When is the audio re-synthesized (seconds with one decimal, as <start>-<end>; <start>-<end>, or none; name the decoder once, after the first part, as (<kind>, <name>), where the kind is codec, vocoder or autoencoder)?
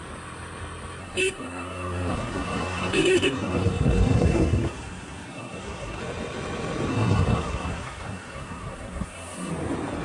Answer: 1.0-6.0 (codec, SNAC); 6.9-9.5